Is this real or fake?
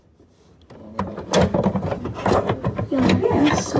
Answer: real